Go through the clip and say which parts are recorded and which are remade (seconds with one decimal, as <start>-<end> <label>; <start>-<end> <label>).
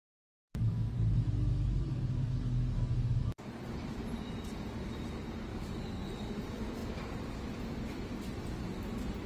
0.0-3.4 remade; 3.4-5.5 recorded; 5.5-6.1 remade; 6.1-9.3 recorded